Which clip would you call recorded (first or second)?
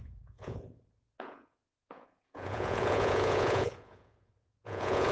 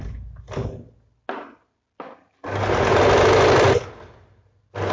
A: second